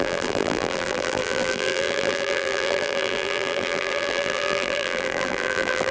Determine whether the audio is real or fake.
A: fake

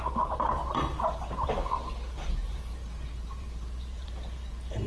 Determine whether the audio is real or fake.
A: fake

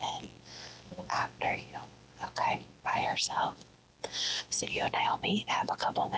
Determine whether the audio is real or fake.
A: fake